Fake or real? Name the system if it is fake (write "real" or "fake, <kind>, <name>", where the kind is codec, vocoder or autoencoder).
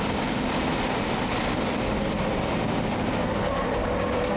real